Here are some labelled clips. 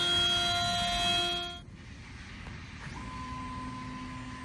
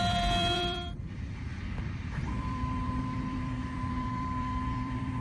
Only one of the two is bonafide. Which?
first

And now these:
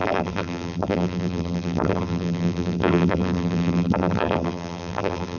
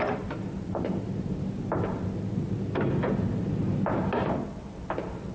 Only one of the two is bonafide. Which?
second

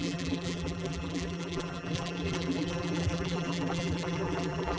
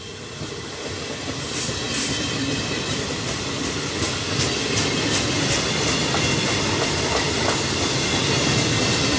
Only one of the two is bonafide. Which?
second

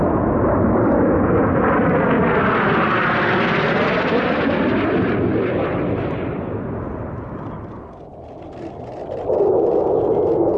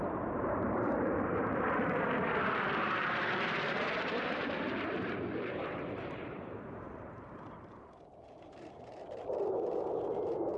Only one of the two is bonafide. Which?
first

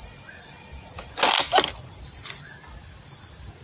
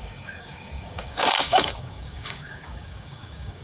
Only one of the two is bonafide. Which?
first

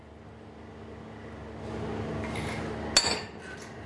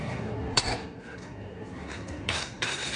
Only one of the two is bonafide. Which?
first